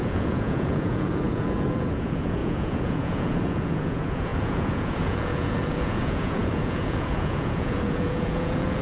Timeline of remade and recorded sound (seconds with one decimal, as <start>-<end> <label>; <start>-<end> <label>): 0.0-8.8 remade